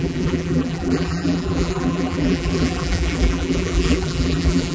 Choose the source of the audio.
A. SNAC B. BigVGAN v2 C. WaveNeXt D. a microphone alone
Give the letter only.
B